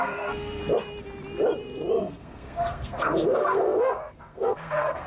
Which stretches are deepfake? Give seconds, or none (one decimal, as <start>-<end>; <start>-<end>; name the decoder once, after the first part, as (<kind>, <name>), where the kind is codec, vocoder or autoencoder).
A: 0.0-0.6 (codec, SNAC); 1.9-5.1